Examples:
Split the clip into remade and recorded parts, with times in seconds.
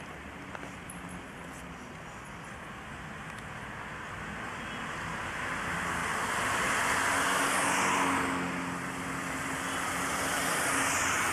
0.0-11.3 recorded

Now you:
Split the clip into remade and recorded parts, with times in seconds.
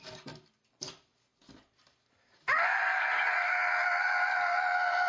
0.0-5.1 recorded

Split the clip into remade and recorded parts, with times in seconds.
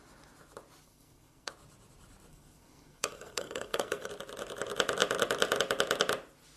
0.0-0.8 recorded; 0.8-1.5 remade; 1.5-2.3 recorded; 2.3-4.1 remade; 4.1-6.6 recorded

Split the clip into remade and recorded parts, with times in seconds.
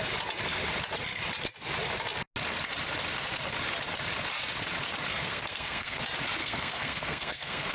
0.0-5.1 recorded; 5.1-6.0 remade; 6.0-6.4 recorded; 6.4-7.7 remade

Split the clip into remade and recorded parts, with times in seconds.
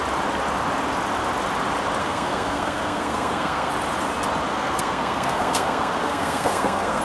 0.0-2.0 recorded; 2.0-3.7 remade; 3.7-4.5 recorded; 4.5-7.0 remade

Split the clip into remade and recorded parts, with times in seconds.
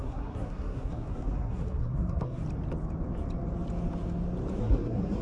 0.0-2.4 remade; 2.4-4.6 recorded; 4.6-5.2 remade